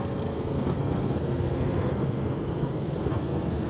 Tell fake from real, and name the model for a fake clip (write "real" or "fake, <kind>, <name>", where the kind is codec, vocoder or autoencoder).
fake, codec, SNAC